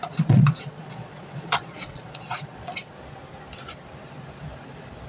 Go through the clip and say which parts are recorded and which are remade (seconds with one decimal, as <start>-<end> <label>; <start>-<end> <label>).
0.0-2.9 remade; 2.9-5.1 recorded